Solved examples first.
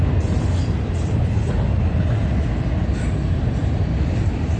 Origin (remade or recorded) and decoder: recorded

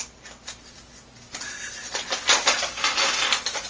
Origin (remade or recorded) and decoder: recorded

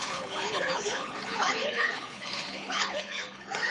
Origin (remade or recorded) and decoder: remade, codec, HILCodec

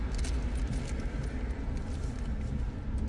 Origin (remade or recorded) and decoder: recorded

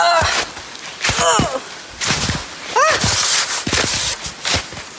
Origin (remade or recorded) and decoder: recorded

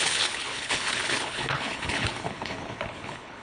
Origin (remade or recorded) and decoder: remade, codec, HILCodec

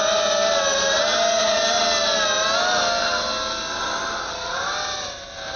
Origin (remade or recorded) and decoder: recorded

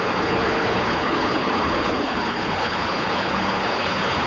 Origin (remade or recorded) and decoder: remade, codec, HILCodec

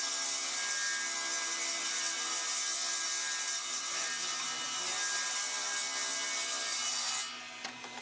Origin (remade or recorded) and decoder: recorded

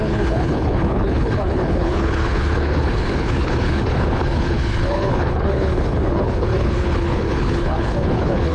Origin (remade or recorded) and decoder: remade, codec, HILCodec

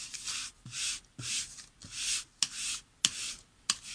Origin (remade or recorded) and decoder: recorded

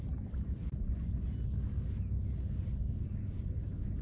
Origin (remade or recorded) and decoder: recorded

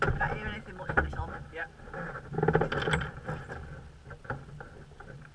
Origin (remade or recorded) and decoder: recorded